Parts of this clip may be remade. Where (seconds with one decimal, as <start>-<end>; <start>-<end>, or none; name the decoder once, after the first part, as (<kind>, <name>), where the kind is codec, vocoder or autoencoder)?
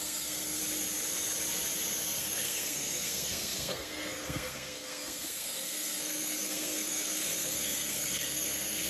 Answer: 0.0-0.6 (codec, SNAC); 2.2-8.9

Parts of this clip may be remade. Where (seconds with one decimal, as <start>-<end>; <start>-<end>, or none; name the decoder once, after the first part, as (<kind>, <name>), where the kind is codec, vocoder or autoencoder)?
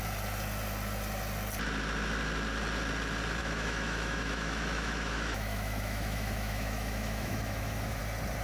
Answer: 3.4-8.0 (autoencoder, DAC-VAE)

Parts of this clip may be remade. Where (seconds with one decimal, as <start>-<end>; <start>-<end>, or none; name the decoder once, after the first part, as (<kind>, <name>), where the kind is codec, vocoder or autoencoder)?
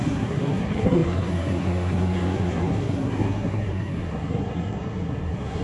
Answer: 0.0-5.6 (codec, SNAC)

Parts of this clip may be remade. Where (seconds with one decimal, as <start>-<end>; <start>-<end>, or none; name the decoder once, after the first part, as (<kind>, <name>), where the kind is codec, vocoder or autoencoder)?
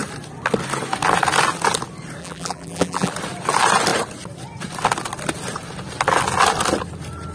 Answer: 2.2-3.1 (vocoder, BigVGAN v2)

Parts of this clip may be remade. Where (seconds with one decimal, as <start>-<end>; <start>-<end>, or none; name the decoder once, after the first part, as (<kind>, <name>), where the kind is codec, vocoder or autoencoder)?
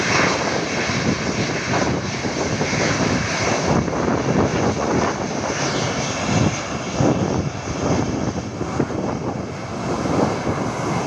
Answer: 4.5-5.1 (vocoder, Vocos)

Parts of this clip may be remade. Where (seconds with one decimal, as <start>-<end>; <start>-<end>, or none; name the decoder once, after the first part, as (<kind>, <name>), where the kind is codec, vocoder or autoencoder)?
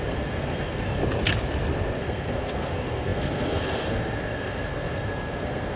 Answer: 0.0-1.0 (codec, SNAC); 2.0-5.8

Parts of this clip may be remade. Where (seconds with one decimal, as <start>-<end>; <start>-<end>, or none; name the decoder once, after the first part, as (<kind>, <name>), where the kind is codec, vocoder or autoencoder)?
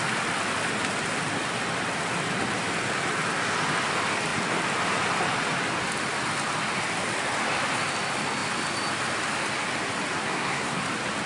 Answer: 10.2-10.8 (codec, SNAC)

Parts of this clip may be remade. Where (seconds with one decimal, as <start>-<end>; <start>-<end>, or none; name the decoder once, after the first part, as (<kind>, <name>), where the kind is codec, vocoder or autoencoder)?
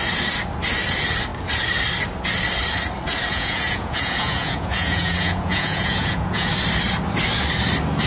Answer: 3.3-6.5 (vocoder, Vocos)